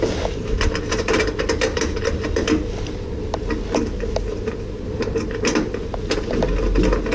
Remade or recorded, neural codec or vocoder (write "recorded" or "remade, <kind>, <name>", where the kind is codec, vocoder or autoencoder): recorded